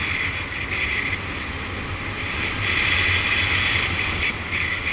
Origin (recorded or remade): recorded